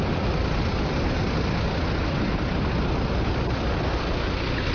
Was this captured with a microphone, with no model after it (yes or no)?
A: yes